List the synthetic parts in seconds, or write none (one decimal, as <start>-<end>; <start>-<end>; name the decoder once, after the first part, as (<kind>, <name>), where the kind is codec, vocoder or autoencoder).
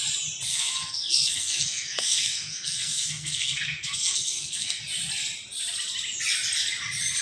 0.5-4.8 (codec, SNAC)